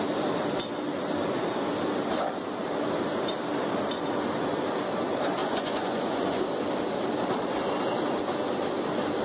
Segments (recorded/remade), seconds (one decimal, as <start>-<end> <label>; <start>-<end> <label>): 0.0-5.4 recorded; 5.4-6.4 remade; 6.4-9.2 recorded